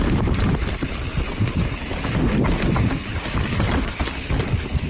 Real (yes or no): yes